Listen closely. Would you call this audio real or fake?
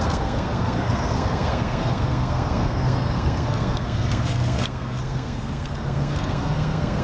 fake